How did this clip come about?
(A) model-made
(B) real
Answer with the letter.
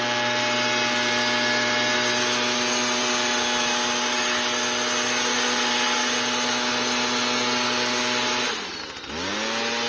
B